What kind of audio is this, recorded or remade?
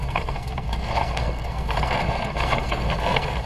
remade